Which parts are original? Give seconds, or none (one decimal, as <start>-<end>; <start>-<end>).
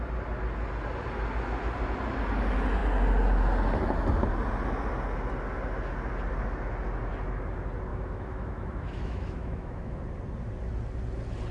0.0-7.9; 10.0-11.5